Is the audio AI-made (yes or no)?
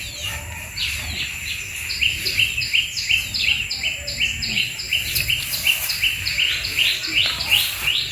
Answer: no